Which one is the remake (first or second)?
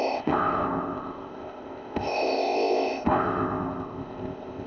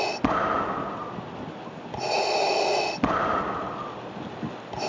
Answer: first